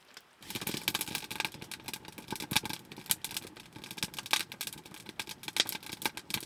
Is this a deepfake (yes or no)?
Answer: no